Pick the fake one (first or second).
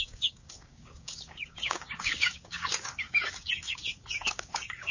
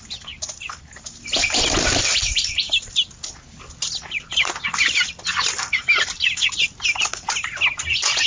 first